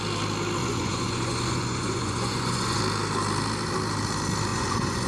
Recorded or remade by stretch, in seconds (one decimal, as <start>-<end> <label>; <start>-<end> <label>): 0.0-0.6 recorded; 0.6-2.8 remade; 2.8-4.5 recorded; 4.5-5.1 remade